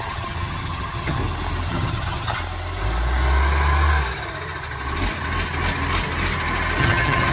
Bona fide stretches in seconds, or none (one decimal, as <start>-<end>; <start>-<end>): 1.2-1.7; 2.4-6.8